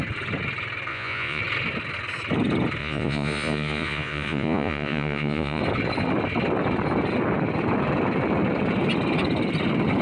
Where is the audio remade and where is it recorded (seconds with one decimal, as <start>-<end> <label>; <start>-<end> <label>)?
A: 0.0-0.9 recorded; 0.9-1.4 remade; 1.4-2.8 recorded; 2.8-5.6 remade; 5.6-10.0 recorded